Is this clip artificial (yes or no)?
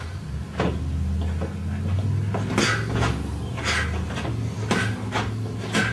no